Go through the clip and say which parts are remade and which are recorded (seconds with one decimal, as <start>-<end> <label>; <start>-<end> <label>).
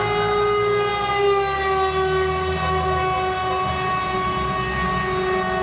0.0-5.6 recorded